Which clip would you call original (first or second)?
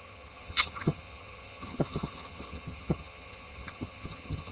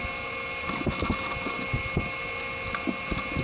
second